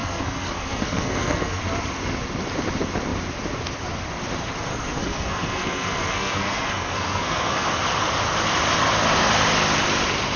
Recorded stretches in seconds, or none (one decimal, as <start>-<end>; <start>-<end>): 1.6-4.7; 7.8-10.4